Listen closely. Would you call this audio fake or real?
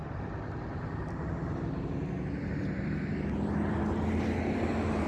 real